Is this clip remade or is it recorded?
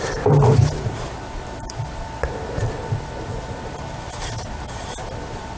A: recorded